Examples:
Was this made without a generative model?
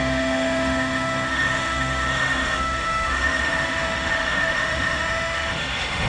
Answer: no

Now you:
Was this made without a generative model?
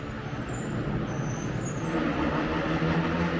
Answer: yes